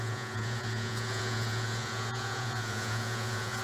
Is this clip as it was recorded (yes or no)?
no